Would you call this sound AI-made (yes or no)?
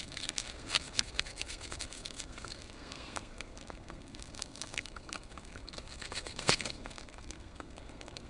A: yes